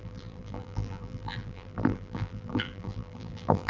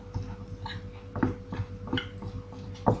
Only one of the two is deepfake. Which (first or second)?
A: first